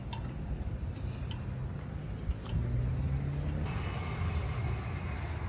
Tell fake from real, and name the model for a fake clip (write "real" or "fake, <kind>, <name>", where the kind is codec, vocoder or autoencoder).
real